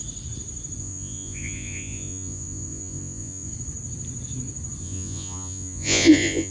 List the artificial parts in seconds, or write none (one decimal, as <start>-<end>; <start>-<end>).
0.8-3.5; 4.8-6.5